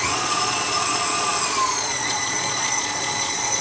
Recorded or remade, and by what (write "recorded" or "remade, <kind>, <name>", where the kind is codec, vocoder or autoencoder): remade, vocoder, Vocos